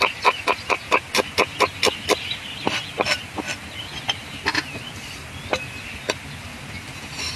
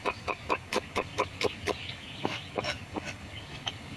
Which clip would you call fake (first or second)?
second